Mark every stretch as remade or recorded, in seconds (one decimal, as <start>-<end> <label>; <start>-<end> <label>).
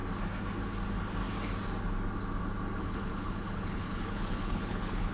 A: 0.0-2.8 recorded; 2.8-5.1 remade